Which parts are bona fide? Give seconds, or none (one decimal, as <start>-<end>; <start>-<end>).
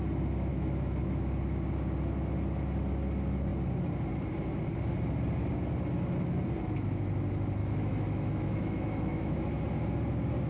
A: 0.0-0.5; 1.0-7.6; 9.3-10.5